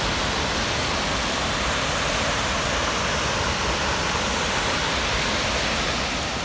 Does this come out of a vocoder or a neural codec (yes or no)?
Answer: no